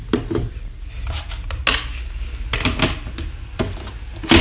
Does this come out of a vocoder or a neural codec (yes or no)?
no